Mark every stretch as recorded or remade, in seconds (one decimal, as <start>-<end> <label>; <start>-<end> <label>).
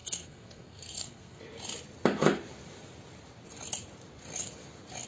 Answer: 0.0-1.4 remade; 1.4-5.1 recorded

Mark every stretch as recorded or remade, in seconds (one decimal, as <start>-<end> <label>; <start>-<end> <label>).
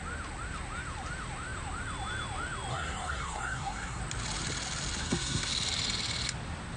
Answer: 0.0-2.7 recorded; 2.7-4.0 remade; 4.0-5.0 recorded; 5.0-5.5 remade; 5.5-6.8 recorded